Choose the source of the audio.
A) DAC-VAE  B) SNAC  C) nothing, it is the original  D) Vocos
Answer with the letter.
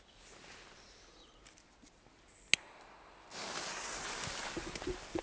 C